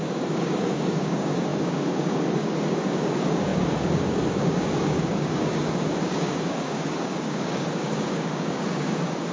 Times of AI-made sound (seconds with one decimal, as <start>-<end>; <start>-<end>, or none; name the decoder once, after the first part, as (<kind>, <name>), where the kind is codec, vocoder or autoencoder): 0.0-9.3 (codec, DAC)